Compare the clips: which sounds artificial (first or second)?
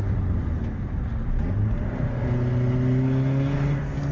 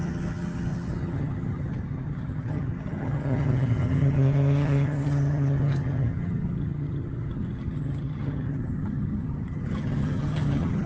second